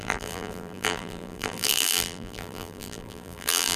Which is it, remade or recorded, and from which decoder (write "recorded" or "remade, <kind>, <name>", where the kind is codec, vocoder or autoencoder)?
remade, vocoder, BigVGAN v2